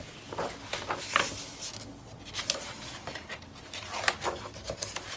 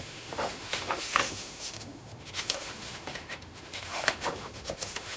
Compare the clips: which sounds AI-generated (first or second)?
second